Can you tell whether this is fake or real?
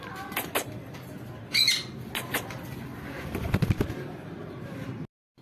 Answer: real